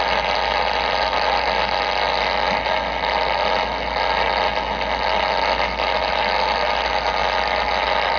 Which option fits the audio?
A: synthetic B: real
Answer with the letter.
B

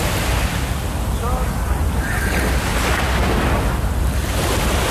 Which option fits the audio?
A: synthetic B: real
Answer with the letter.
B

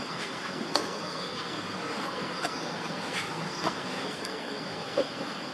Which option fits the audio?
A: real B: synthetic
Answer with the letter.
B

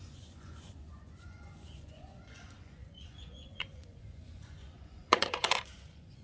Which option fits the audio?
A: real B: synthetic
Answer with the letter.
B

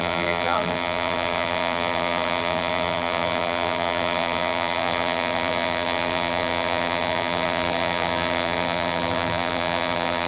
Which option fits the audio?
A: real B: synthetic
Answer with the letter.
B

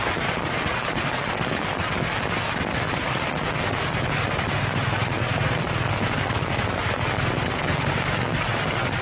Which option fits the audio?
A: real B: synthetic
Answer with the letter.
A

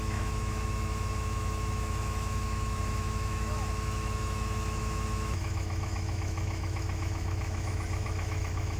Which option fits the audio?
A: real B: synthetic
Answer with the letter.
B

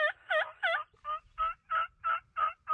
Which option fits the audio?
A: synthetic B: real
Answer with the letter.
B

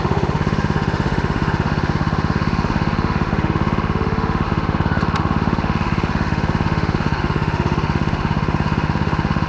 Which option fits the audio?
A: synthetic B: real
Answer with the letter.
A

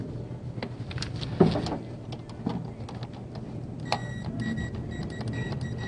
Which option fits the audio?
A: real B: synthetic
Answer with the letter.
A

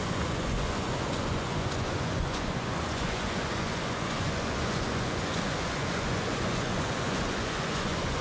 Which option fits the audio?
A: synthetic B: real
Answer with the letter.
A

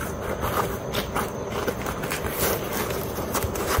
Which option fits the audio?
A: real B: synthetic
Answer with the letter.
B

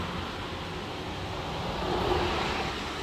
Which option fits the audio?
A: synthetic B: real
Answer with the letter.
B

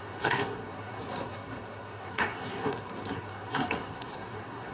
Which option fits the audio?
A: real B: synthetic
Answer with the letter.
B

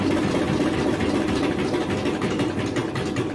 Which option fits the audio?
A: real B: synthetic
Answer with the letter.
A